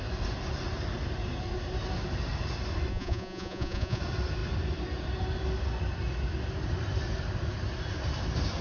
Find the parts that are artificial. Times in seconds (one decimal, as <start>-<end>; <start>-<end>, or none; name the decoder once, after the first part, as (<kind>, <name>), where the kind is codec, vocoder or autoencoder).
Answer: 2.9-4.0 (vocoder, Vocos)